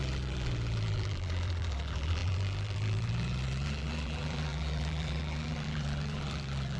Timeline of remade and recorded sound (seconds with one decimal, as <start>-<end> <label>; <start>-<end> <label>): 0.0-6.8 remade